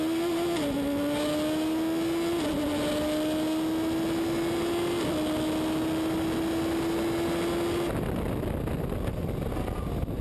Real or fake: real